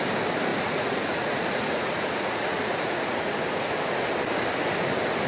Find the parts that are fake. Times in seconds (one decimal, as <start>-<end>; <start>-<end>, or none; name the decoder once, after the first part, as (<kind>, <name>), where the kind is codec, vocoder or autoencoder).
0.5-3.7 (vocoder, Vocos)

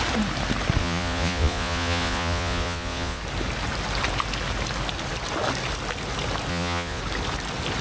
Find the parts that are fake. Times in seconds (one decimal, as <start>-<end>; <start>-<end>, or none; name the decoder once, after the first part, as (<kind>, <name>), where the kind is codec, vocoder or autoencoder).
0.8-3.2 (vocoder, Vocos); 6.5-7.0

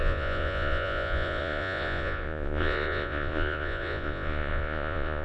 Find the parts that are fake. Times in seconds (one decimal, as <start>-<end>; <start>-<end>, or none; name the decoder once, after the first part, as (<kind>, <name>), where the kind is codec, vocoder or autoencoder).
0.0-5.2 (vocoder, Vocos)

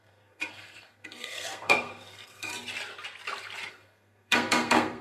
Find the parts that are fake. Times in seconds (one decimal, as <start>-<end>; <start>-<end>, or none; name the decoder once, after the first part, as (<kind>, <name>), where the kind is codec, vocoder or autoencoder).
0.0-2.5 (codec, SNAC); 3.7-5.0

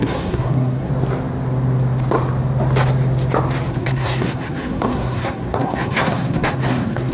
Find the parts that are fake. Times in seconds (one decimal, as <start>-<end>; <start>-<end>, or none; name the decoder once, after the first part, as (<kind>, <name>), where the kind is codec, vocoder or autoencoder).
0.0-0.9 (codec, SNAC); 3.7-7.1

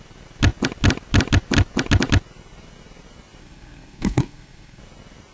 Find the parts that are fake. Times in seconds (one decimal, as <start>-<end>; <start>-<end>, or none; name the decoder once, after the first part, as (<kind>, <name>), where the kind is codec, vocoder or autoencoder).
3.4-4.8 (codec, SNAC)

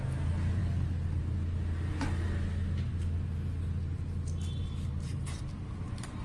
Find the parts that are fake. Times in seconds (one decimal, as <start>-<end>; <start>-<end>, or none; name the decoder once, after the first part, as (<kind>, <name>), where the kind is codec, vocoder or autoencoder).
4.6-5.4 (vocoder, BigVGAN v2)

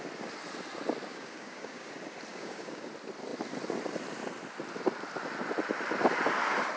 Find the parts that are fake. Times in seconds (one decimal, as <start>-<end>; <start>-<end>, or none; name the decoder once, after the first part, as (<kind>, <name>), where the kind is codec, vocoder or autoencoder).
1.1-1.9 (codec, DAC); 2.3-2.9